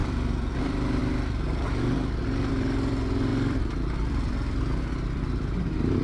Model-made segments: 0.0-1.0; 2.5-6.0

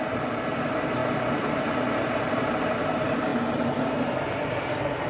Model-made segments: 0.0-1.0; 2.1-3.3

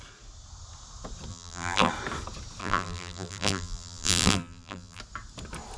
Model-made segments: 1.3-1.9; 2.6-5.0

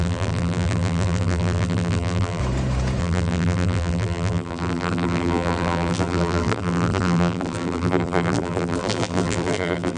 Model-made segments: 0.0-2.4; 3.0-10.0

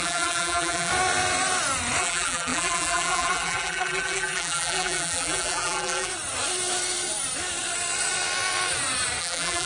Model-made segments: 0.0-0.9; 2.0-6.1; 9.2-9.7